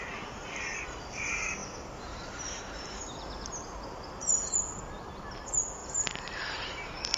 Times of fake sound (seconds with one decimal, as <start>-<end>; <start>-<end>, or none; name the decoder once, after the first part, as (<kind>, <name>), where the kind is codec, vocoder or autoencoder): 1.6-3.0 (vocoder, BigVGAN v2); 5.8-6.4